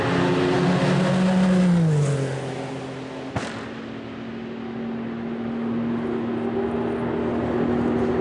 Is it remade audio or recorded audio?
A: recorded